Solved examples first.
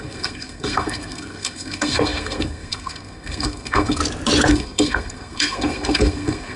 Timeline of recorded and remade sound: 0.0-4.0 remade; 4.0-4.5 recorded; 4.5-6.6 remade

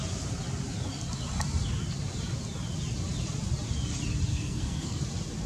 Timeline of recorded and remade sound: 0.0-4.3 recorded; 4.3-5.0 remade; 5.0-5.5 recorded

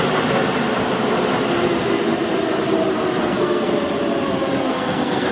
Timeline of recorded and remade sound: 0.0-3.2 recorded; 3.2-3.7 remade; 3.7-4.6 recorded; 4.6-5.3 remade